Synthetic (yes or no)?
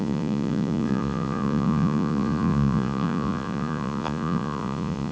yes